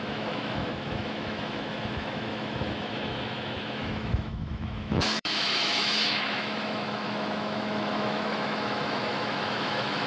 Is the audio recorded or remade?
remade